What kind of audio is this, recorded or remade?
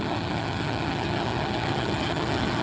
remade